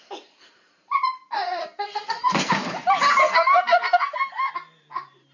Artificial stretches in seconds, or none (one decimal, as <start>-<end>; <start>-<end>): 1.6-2.5; 3.2-4.5